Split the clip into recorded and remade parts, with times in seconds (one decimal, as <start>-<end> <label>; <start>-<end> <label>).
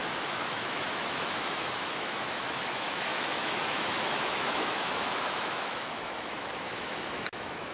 0.0-7.7 remade